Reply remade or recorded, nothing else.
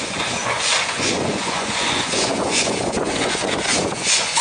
remade